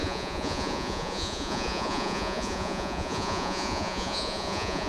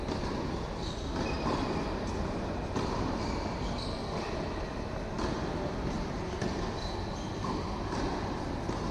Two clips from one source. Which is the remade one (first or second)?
first